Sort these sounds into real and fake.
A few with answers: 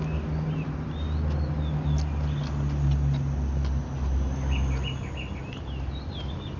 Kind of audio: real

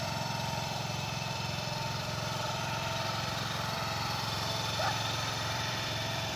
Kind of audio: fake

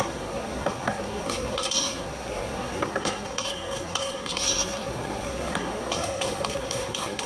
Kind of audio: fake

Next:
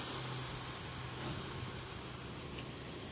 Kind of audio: real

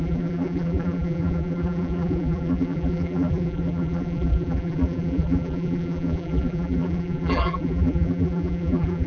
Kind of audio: fake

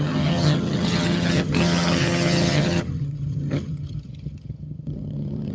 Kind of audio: fake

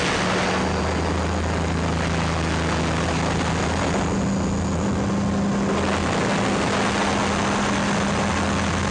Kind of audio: real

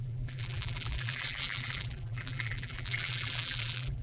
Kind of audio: fake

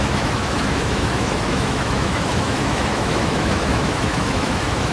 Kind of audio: fake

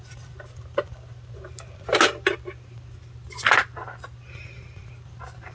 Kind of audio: real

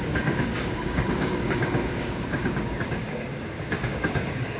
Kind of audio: fake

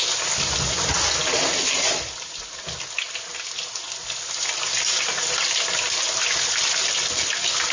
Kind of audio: real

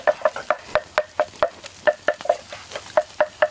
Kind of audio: real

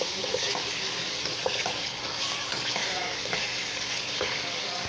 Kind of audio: fake